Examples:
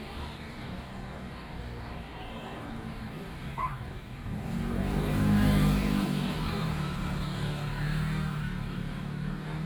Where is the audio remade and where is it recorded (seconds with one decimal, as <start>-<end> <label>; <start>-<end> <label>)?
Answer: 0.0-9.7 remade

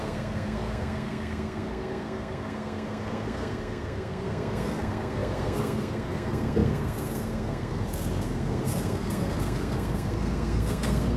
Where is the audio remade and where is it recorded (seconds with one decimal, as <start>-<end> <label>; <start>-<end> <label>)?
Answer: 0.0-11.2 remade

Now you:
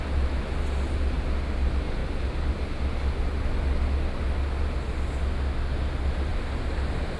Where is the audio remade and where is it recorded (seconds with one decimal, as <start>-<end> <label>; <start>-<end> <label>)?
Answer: 0.0-7.2 recorded